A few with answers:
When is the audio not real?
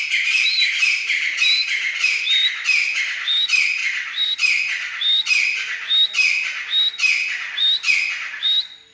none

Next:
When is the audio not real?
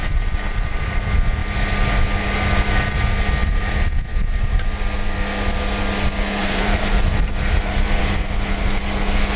0.0-1.0 (vocoder, BigVGAN v2); 3.4-4.7; 6.4-8.0